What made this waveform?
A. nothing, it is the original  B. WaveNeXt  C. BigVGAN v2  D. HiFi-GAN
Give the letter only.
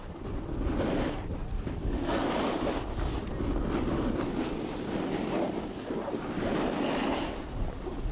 A